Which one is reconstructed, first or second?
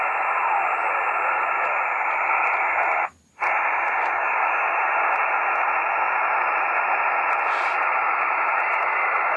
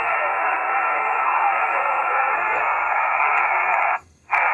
second